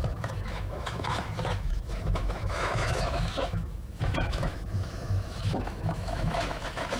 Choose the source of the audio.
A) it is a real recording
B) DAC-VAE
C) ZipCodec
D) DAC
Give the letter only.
B